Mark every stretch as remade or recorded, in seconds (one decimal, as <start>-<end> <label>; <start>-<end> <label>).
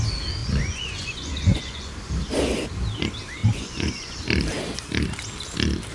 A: 0.0-0.4 recorded; 0.4-1.9 remade; 1.9-3.4 recorded; 3.4-4.2 remade; 4.2-5.9 recorded